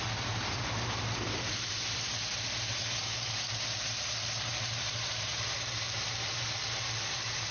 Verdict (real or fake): fake